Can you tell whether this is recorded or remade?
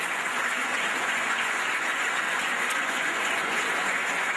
remade